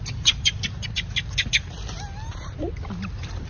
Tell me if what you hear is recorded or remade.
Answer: recorded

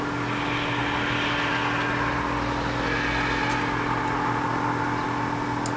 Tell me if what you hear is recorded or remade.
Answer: recorded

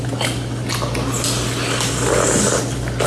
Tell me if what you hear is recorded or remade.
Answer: recorded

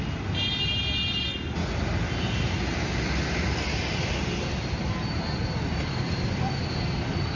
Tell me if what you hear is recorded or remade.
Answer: recorded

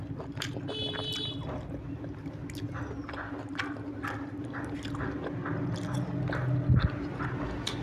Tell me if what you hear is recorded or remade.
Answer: recorded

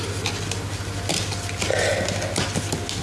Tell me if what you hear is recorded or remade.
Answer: recorded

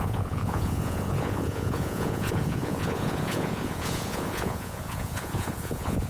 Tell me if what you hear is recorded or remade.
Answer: remade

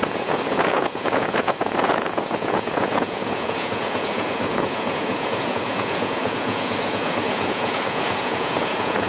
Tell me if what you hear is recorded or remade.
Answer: remade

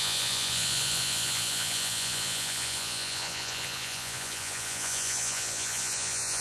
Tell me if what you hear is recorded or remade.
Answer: remade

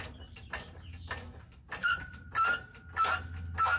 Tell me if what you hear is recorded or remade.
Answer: recorded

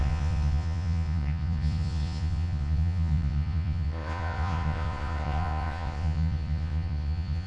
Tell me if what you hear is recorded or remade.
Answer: remade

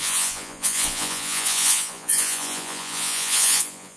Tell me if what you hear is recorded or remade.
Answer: remade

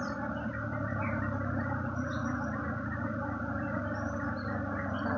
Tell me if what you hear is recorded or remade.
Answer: recorded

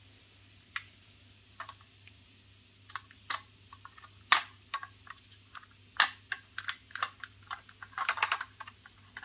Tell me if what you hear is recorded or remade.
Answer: recorded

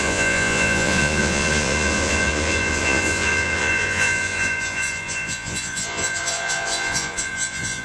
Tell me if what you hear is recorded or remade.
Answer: remade